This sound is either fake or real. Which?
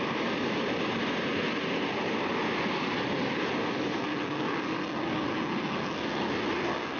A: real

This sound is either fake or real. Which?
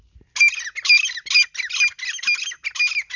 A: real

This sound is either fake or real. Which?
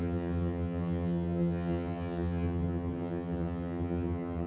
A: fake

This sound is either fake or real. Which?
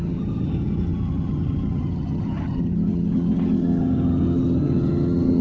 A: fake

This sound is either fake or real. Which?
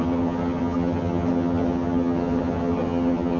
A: fake